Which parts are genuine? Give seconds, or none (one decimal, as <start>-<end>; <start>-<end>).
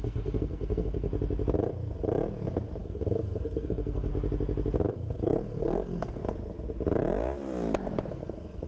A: 1.1-2.8; 4.1-4.9; 6.2-8.1